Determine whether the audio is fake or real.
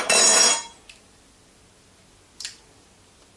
real